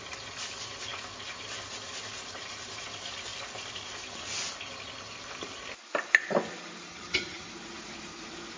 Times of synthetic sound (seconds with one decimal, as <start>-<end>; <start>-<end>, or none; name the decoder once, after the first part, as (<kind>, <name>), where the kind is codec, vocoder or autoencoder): 6.9-7.5 (vocoder, HiFi-GAN)